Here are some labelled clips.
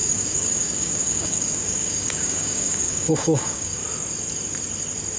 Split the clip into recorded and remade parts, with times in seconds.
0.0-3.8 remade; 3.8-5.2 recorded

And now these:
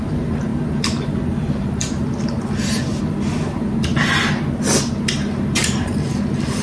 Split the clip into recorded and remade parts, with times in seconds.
0.0-6.6 recorded

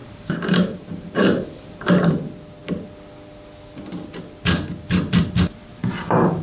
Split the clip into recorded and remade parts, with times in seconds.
0.0-1.9 remade; 1.9-5.8 recorded; 5.8-6.4 remade

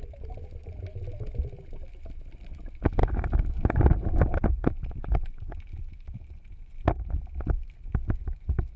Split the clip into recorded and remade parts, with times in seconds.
0.0-8.8 recorded